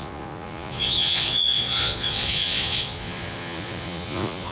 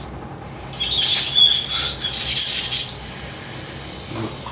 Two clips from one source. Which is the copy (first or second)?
first